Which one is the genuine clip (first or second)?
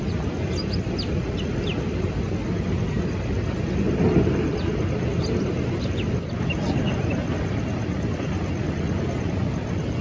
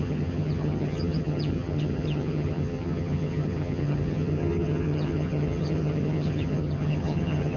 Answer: first